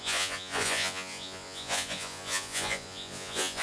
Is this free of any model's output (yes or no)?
no